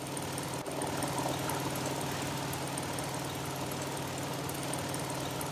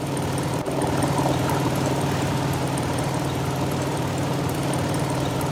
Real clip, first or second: first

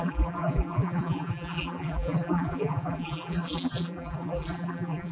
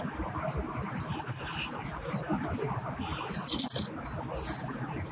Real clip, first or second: second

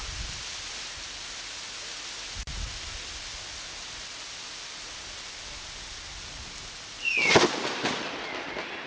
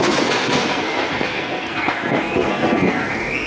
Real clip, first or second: first